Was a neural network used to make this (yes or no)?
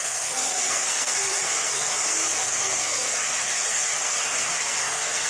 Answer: yes